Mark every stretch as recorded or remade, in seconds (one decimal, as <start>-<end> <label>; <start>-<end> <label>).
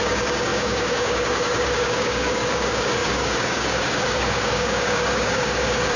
0.0-6.0 remade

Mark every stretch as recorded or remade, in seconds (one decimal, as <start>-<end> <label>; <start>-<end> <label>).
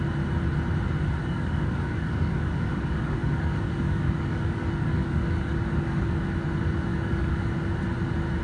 0.0-1.2 recorded; 1.2-6.2 remade; 6.2-6.9 recorded; 6.9-7.5 remade; 7.5-8.4 recorded